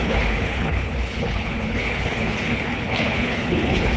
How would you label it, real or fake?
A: fake